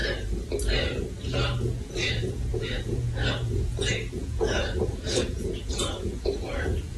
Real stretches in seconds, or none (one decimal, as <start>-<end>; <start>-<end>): 0.0-1.8